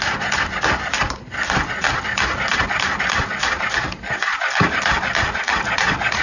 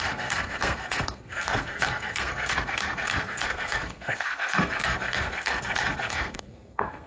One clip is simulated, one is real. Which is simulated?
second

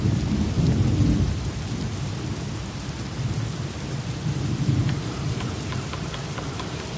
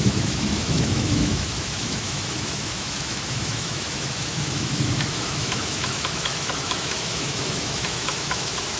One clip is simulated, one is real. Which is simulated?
second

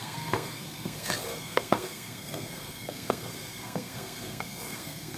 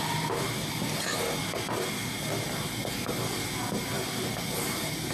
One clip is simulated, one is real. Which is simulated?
first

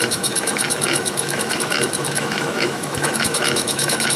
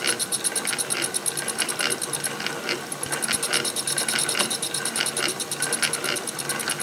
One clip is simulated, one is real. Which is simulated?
first